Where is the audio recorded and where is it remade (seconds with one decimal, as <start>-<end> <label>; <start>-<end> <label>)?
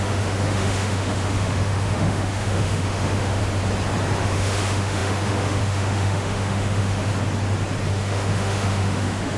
0.0-3.4 remade; 3.4-4.2 recorded; 4.2-7.1 remade; 7.1-7.9 recorded; 7.9-9.4 remade